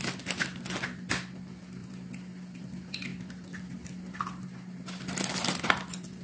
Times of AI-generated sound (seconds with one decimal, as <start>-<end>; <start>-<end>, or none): none